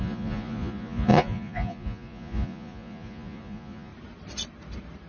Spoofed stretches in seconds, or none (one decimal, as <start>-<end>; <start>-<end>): 0.0-3.9